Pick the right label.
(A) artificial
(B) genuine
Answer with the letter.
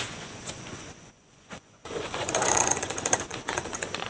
A